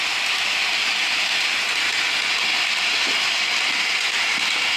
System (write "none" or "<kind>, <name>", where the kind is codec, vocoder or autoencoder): none